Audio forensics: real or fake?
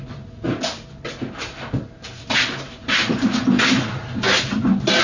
real